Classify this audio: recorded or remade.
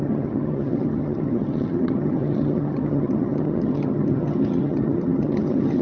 remade